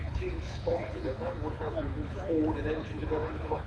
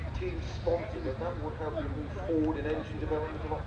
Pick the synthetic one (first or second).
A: first